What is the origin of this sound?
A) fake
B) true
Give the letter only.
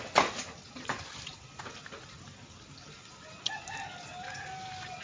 B